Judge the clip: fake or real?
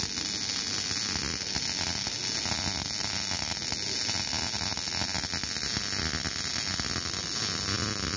real